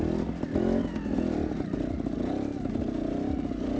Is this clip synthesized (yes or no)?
no